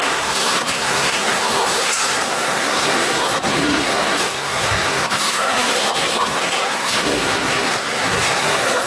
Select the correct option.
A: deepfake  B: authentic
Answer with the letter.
A